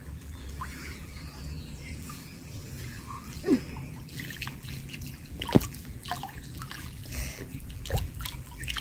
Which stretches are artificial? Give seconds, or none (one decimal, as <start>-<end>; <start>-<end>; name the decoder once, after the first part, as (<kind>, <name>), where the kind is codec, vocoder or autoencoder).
0.0-8.8 (vocoder, BigVGAN v2)